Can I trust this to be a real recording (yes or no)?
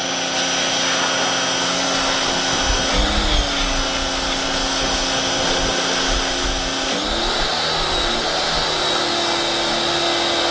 yes